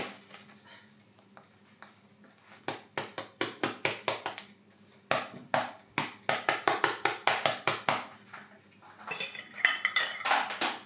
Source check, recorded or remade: recorded